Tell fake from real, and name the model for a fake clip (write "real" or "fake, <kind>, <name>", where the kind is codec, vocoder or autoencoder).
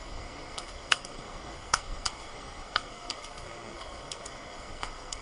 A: fake, codec, SNAC